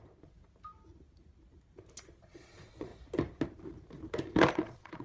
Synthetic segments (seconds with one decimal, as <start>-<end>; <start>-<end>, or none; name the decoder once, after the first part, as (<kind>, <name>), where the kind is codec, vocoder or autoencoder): 0.0-0.4 (vocoder, Vocos); 2.0-2.9; 4.5-5.0